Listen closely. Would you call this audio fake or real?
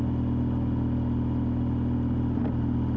real